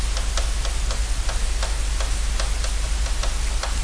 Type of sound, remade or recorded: recorded